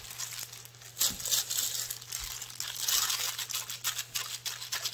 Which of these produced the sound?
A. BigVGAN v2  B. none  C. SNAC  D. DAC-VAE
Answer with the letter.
B